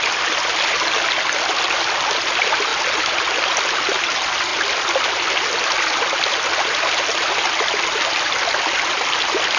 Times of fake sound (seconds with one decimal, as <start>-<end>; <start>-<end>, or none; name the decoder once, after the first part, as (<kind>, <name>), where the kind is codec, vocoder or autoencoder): none